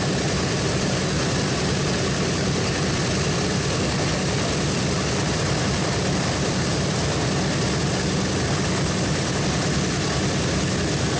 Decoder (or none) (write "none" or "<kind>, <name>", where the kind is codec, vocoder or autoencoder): none